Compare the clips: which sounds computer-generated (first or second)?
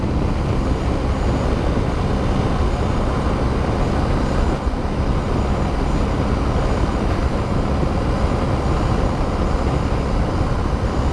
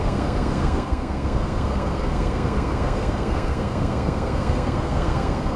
second